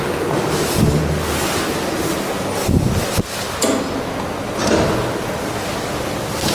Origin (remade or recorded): recorded